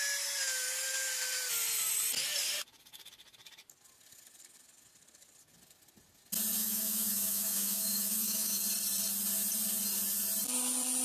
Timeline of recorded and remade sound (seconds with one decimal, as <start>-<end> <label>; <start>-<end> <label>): 0.0-6.6 recorded; 6.6-8.6 remade; 8.6-11.0 recorded